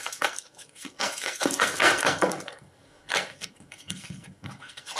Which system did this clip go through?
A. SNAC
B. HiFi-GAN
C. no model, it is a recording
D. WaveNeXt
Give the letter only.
A